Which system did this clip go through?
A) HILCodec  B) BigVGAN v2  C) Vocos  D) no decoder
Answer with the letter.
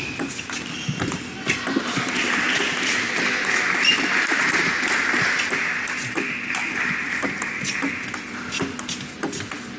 D